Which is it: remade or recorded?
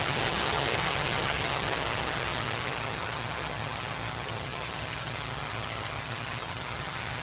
remade